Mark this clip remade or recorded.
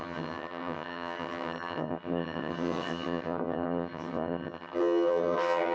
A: remade